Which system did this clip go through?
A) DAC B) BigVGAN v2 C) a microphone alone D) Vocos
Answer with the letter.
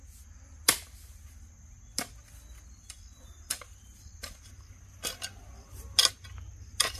C